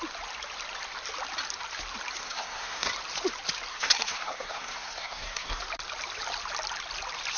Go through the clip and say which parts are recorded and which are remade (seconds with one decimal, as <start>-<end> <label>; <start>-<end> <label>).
0.0-2.2 recorded; 2.2-2.9 remade; 2.9-3.7 recorded; 3.7-5.6 remade; 5.6-7.4 recorded

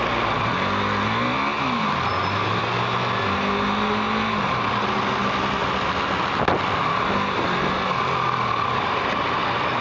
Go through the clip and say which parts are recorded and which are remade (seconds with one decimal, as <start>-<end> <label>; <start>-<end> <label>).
0.0-9.8 recorded

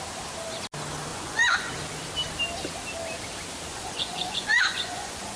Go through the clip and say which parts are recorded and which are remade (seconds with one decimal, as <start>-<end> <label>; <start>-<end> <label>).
0.0-1.1 recorded; 1.1-1.7 remade; 1.7-3.7 recorded; 3.7-5.4 remade